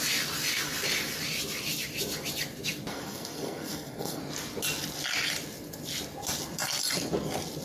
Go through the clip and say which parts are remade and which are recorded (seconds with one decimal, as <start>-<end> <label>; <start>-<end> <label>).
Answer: 0.0-2.9 recorded; 2.9-4.2 remade; 4.2-7.6 recorded